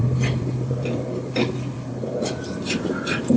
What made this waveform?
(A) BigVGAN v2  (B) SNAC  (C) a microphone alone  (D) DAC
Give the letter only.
A